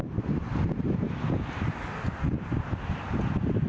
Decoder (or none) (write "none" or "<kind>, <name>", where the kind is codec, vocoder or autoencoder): none